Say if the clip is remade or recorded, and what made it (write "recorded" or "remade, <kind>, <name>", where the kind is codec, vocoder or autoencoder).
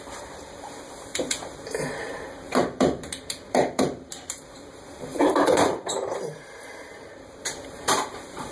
remade, vocoder, BigVGAN v2